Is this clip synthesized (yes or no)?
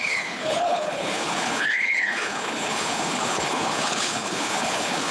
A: yes